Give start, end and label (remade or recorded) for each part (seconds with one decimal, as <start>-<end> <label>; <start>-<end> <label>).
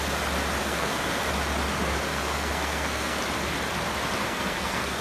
0.0-0.6 recorded; 0.6-1.2 remade; 1.2-2.1 recorded; 2.1-3.2 remade; 3.2-4.2 recorded; 4.2-5.0 remade